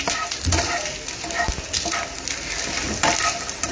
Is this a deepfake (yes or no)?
no